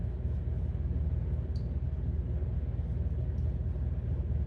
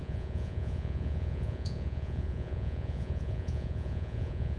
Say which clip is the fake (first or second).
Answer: second